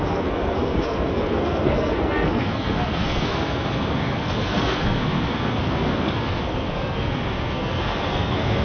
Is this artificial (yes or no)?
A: yes